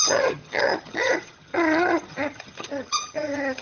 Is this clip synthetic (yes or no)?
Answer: yes